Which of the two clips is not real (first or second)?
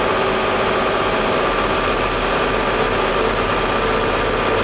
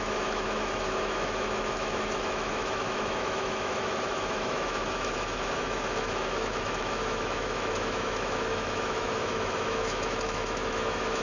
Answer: second